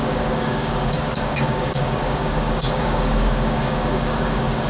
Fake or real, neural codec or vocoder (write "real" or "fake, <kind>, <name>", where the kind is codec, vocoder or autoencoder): fake, codec, DAC